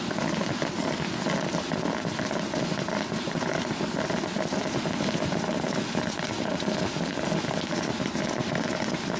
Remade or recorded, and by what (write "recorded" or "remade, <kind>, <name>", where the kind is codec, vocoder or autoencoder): recorded